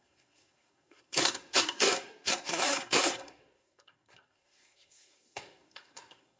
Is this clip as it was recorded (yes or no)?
no